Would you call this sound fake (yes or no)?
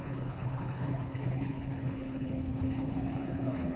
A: yes